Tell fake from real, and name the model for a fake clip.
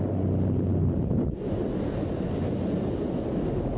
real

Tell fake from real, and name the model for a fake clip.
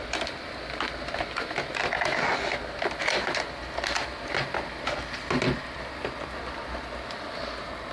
real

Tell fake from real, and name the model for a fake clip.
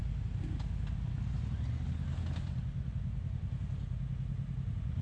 real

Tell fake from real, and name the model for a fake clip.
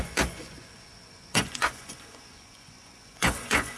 fake, vocoder, Vocos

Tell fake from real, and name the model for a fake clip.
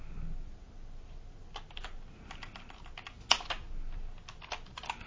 real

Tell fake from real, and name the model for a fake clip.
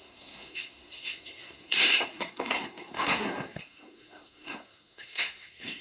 fake, codec, SNAC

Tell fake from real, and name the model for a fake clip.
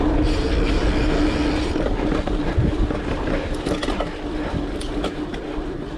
real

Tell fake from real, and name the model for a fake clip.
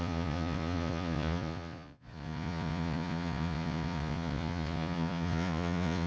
fake, vocoder, Vocos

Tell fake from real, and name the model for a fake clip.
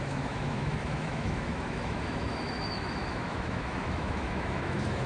fake, autoencoder, DAC-VAE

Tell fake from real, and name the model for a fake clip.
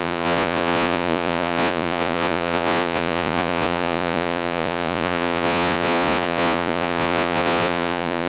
fake, vocoder, Vocos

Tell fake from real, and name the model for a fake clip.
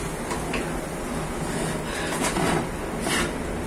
real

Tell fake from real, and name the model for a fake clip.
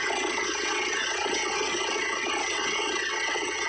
fake, vocoder, WaveNeXt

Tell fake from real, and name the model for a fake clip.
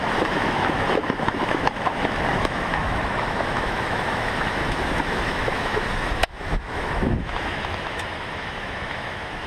fake, autoencoder, DAC-VAE